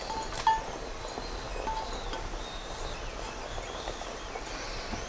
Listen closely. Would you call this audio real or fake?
real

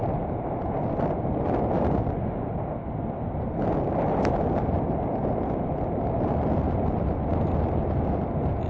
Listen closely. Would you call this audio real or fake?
real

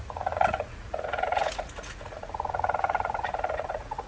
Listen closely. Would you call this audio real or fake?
fake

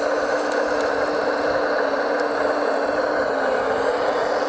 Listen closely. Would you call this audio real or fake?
real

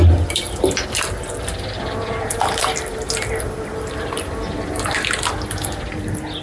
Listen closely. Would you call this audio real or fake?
real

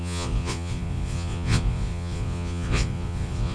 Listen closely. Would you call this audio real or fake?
fake